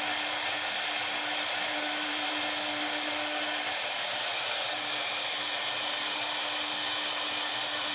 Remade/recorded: recorded